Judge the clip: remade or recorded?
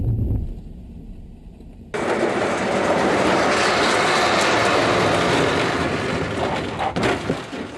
recorded